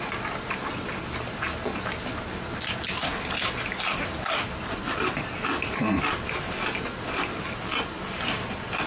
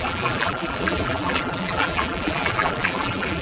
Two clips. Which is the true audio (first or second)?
first